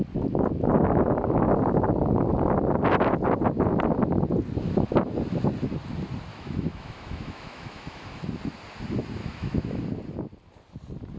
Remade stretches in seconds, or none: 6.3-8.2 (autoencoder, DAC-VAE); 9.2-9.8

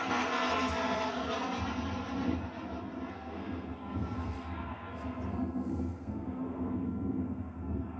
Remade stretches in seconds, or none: 0.0-1.2 (codec, SNAC); 3.1-8.0

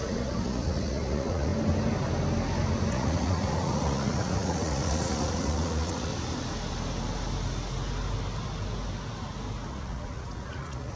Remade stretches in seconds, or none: 0.0-1.5 (vocoder, Vocos); 2.9-6.1; 9.7-11.0

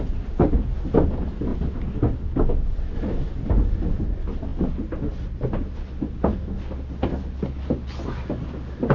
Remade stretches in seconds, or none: none

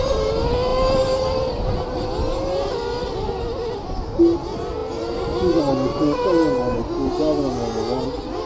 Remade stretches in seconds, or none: none